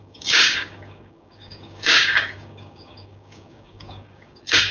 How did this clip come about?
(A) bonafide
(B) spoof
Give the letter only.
B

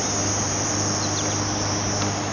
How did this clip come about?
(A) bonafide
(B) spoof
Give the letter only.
A